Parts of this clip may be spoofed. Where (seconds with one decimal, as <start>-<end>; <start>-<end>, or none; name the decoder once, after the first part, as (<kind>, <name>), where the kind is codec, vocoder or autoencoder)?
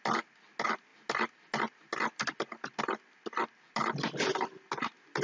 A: none